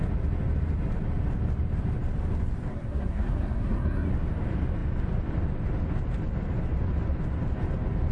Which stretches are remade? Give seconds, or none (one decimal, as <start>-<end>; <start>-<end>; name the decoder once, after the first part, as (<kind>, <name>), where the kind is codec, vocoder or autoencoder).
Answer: 2.7-4.1 (codec, SNAC)